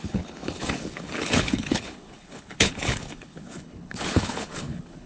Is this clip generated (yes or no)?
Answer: yes